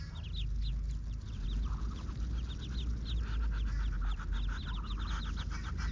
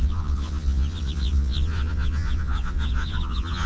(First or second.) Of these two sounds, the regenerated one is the second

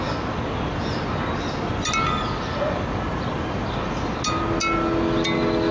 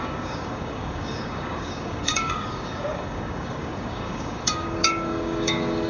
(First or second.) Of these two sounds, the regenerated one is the second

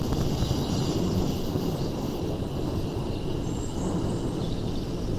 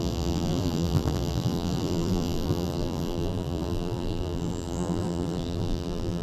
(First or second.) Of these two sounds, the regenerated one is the second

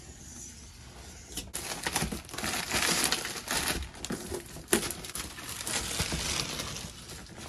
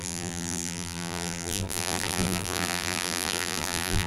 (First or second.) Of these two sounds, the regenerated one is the second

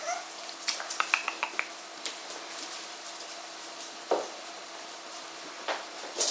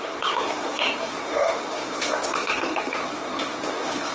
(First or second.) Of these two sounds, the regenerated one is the second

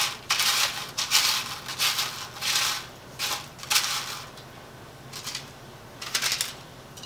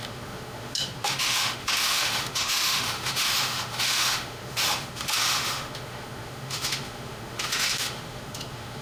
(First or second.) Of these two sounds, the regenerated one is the second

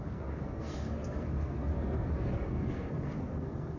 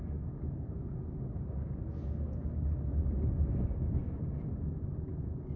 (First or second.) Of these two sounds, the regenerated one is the first